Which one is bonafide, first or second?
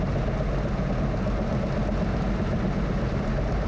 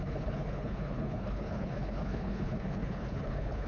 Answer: first